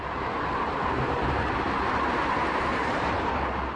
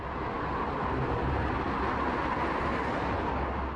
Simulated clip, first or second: first